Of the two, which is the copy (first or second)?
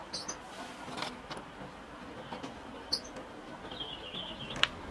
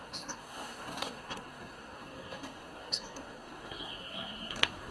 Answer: second